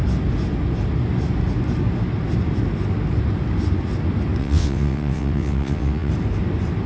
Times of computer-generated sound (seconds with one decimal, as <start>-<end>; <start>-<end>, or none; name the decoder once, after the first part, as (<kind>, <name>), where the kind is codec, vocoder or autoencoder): 4.4-6.1 (vocoder, WaveNeXt)